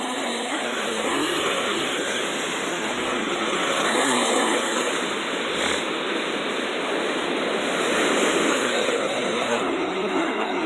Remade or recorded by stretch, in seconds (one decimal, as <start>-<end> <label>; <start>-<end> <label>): 0.0-2.2 remade; 2.2-2.7 recorded; 2.7-4.9 remade; 4.9-8.5 recorded; 8.5-10.7 remade